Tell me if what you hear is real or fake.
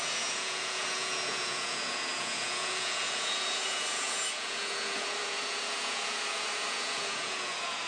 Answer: fake